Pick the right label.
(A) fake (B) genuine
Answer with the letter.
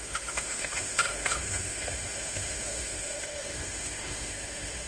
A